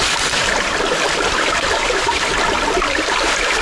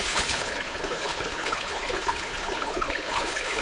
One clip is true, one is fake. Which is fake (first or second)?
second